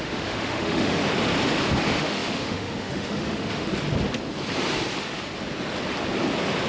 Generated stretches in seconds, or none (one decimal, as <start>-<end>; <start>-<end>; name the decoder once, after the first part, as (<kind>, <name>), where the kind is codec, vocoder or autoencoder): 0.0-1.0 (autoencoder, DAC-VAE); 1.8-3.7